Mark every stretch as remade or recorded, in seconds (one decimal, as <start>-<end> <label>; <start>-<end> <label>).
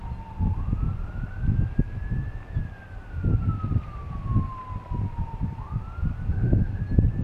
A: 0.0-6.3 recorded; 6.3-6.8 remade; 6.8-7.2 recorded